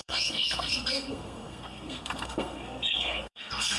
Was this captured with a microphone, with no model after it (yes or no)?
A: no